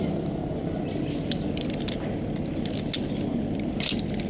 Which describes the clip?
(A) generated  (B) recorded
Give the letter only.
B